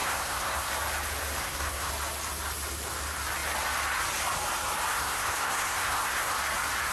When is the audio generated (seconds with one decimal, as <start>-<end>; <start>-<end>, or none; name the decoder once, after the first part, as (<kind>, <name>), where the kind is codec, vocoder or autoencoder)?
0.0-0.7 (codec, SNAC); 1.4-1.9; 4.9-6.3